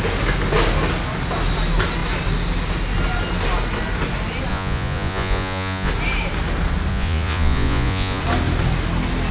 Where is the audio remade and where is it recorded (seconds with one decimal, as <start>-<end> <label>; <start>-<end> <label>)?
0.0-4.5 recorded; 4.5-5.9 remade; 5.9-6.9 recorded; 6.9-8.2 remade; 8.2-9.3 recorded